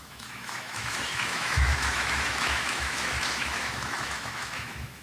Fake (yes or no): yes